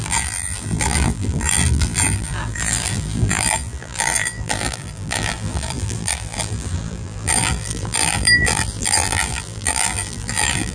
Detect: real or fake fake